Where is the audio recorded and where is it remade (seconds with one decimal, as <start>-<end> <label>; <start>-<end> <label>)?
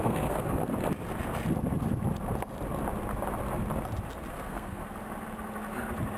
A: 0.0-0.6 remade; 0.6-4.3 recorded; 4.3-4.8 remade; 4.8-6.2 recorded